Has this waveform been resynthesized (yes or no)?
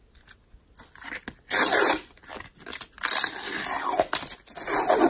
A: no